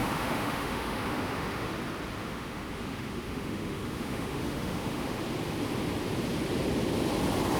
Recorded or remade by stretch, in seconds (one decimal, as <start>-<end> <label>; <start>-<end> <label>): 0.0-1.7 remade; 1.7-2.2 recorded; 2.2-5.2 remade; 5.2-7.6 recorded